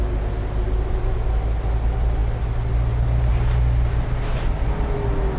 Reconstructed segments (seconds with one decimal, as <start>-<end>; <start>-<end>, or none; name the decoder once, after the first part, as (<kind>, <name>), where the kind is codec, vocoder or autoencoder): none